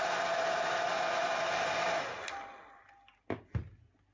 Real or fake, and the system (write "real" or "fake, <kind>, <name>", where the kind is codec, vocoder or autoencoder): real